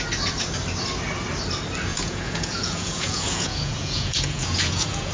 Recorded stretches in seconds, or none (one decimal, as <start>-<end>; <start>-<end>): 0.0-1.9